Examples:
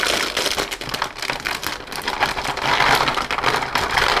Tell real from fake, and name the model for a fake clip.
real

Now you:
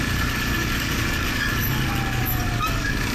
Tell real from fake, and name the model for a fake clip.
fake, codec, DAC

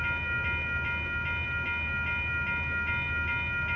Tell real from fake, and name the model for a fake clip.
real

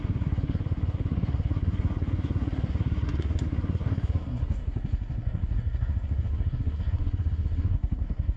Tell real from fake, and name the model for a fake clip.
fake, codec, SNAC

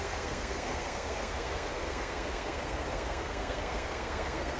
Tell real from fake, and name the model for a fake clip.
fake, codec, SNAC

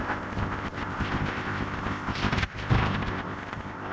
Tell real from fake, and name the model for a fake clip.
fake, codec, ZipCodec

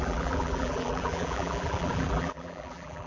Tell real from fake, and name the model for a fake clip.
fake, vocoder, BigVGAN v2